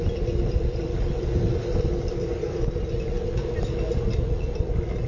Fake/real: real